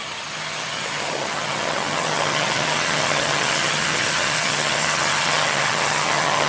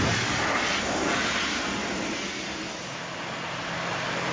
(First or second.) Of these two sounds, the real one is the second